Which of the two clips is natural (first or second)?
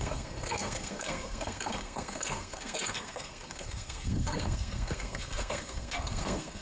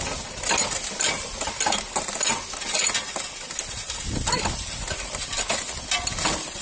second